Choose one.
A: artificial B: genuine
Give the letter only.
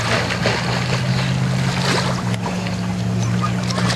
B